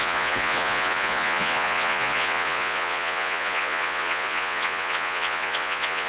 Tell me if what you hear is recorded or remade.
remade